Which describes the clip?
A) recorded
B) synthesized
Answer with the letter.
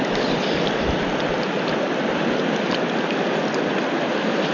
A